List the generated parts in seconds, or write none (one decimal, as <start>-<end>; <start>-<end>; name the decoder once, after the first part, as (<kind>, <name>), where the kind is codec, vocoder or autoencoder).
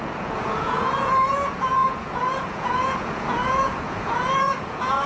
0.0-5.1 (vocoder, Vocos)